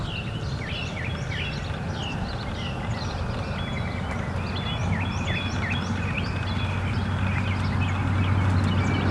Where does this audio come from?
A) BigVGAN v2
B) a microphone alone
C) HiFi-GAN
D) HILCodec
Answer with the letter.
B